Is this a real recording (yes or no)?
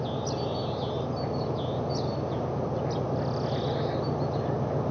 yes